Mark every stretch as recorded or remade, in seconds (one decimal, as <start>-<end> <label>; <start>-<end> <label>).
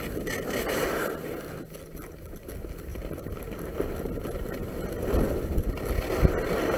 0.0-6.8 recorded